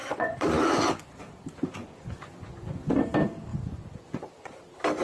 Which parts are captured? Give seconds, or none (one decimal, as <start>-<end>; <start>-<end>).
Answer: 0.8-1.8; 3.0-3.5; 4.6-5.0